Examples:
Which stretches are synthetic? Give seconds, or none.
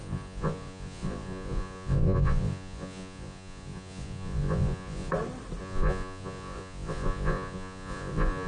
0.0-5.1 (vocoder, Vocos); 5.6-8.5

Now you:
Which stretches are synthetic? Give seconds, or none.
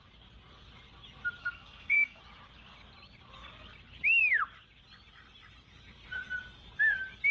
1.4-2.2 (codec, SNAC)